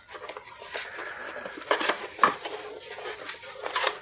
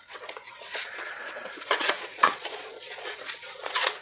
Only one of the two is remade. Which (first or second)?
second